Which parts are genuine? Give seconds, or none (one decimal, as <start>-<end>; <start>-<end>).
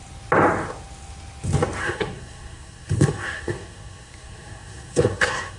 0.0-1.8